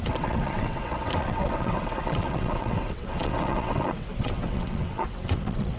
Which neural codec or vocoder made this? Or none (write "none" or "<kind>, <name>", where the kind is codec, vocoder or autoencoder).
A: vocoder, WaveNeXt